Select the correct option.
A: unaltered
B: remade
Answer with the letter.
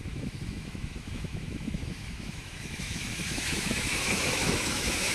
B